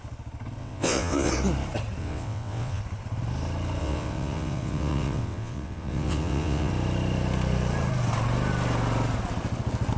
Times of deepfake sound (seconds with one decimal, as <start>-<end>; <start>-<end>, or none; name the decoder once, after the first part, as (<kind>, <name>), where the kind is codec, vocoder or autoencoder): 0.6-1.3 (vocoder, WaveNeXt); 2.0-2.8; 3.8-6.7